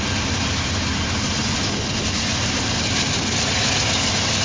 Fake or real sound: real